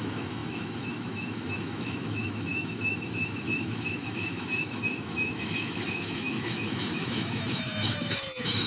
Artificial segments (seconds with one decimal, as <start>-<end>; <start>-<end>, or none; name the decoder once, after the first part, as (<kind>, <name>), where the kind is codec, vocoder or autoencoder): 0.0-8.7 (autoencoder, DAC-VAE)